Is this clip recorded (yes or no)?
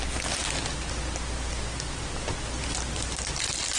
yes